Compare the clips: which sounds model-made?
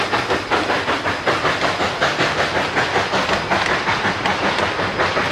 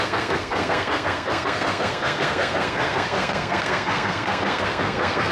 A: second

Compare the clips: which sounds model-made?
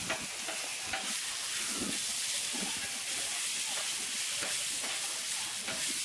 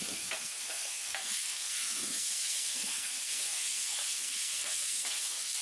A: second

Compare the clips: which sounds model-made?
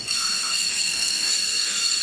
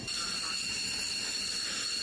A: first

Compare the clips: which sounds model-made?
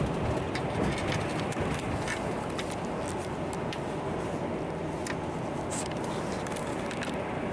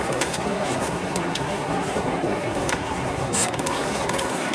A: second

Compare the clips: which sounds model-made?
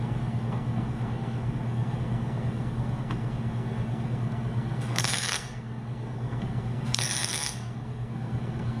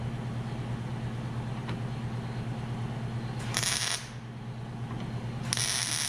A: first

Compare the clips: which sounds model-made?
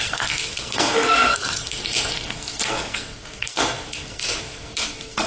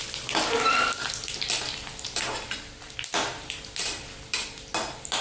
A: first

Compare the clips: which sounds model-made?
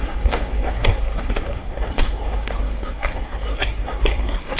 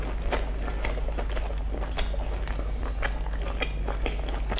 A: first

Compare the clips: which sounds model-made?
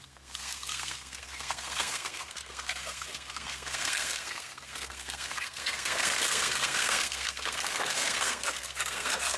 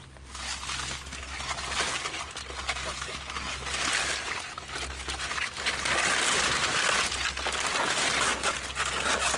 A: first